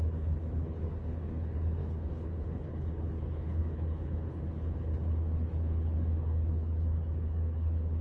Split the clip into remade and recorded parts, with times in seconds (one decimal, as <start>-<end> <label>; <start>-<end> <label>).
0.0-8.0 remade